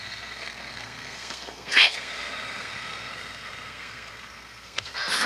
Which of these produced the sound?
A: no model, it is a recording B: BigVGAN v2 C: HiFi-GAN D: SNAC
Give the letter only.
D